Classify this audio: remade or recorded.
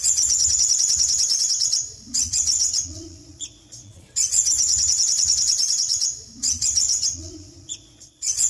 remade